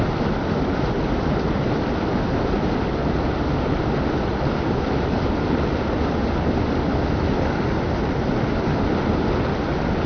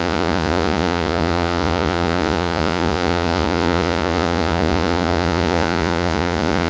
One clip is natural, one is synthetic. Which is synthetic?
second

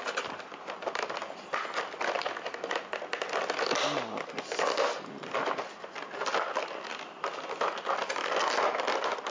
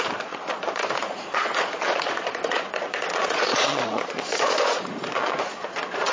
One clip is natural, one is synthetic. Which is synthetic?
second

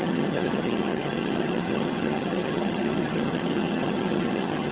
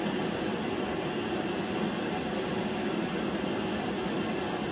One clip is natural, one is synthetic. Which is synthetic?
first